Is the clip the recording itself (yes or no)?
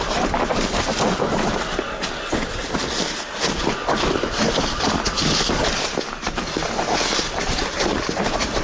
yes